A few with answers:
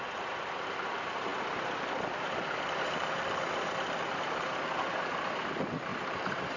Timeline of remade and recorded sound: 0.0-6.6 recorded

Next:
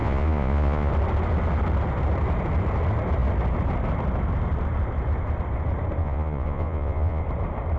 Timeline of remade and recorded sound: 0.0-0.9 remade; 0.9-6.0 recorded; 6.0-7.2 remade; 7.2-7.8 recorded

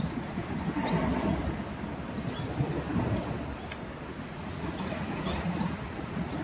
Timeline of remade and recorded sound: 0.0-0.4 remade; 0.4-4.2 recorded; 4.2-6.4 remade

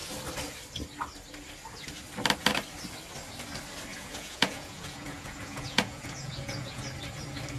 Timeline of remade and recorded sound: 0.0-3.9 recorded; 3.9-6.8 remade; 6.8-7.6 recorded

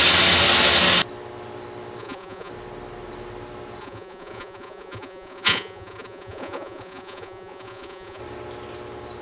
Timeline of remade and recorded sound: 0.0-2.0 recorded; 2.0-2.5 remade; 2.5-3.8 recorded; 3.8-8.2 remade; 8.2-9.2 recorded

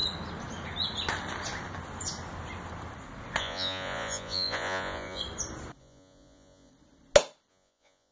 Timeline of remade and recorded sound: 0.0-3.4 recorded; 3.4-5.2 remade; 5.2-5.8 recorded; 5.8-6.7 remade; 6.7-7.5 recorded; 7.5-8.1 remade

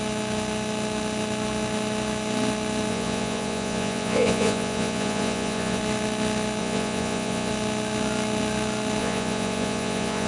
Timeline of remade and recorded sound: 0.0-2.9 recorded; 2.9-5.8 remade; 5.8-6.6 recorded; 6.6-7.5 remade; 7.5-9.0 recorded; 9.0-10.3 remade